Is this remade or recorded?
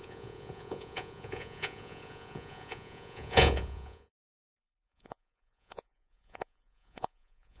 remade